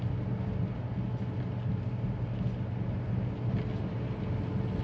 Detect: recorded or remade recorded